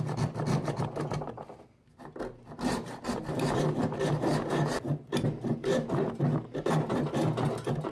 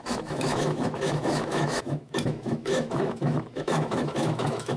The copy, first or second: second